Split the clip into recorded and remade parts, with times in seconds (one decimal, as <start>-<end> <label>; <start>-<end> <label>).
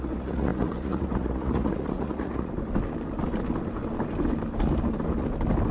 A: 0.0-2.5 remade; 2.5-5.7 recorded